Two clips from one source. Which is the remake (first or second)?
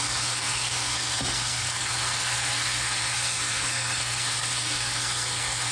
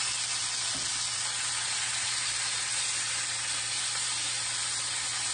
first